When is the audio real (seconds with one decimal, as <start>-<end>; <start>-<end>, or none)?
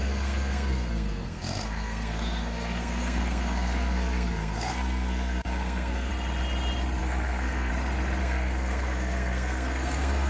6.1-7.0; 7.7-8.2